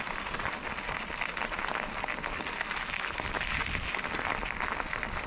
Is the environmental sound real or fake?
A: real